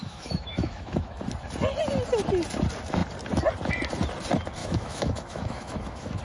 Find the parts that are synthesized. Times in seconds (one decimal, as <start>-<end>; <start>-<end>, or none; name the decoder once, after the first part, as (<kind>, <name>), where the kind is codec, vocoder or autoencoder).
0.0-1.2 (autoencoder, DAC-VAE); 4.6-6.2